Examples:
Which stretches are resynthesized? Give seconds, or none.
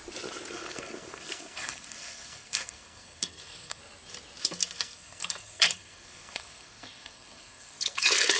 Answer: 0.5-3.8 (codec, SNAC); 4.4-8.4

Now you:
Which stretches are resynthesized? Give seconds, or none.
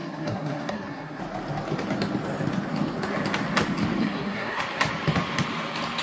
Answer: 0.0-1.2 (codec, SNAC); 4.0-4.6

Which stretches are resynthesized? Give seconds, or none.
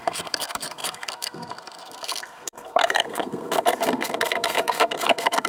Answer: 0.0-5.5 (codec, SNAC)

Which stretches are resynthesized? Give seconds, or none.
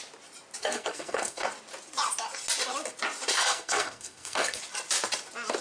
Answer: 0.6-1.5 (codec, SNAC); 3.3-4.6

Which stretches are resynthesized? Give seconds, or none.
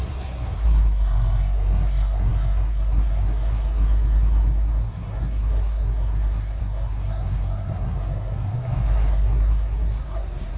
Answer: 0.0-10.6 (codec, SNAC)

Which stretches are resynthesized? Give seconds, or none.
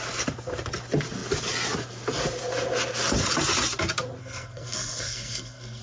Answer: 4.2-5.8 (codec, SNAC)